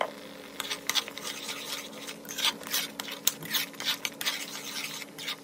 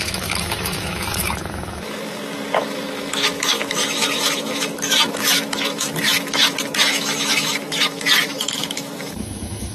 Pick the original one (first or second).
first